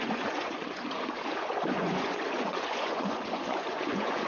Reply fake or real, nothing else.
fake